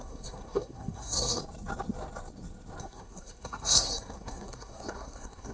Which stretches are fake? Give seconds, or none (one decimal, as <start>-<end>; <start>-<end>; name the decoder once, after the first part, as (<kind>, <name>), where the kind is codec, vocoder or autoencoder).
0.0-1.4 (codec, SNAC); 2.8-5.5

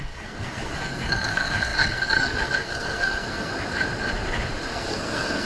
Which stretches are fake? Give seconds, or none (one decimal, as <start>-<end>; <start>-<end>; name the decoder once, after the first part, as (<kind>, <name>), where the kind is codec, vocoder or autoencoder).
0.0-3.5 (codec, SNAC); 4.7-5.5

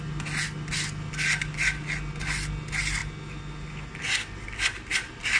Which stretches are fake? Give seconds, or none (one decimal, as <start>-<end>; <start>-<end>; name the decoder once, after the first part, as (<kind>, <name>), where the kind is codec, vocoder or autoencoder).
none